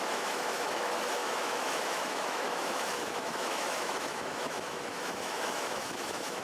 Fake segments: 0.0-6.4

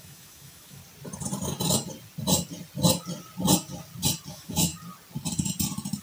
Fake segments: 0.0-0.8; 4.3-4.7

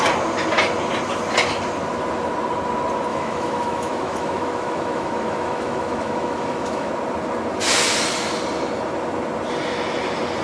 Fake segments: 3.1-6.9

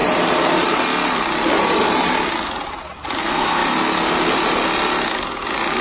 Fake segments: 3.2-3.6

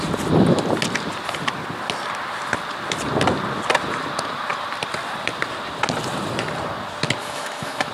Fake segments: 7.2-7.9

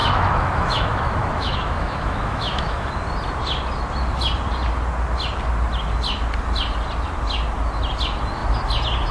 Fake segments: 0.0-2.9

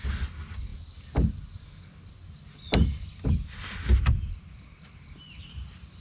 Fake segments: none

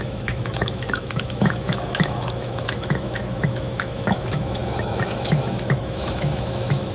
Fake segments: 0.0-6.9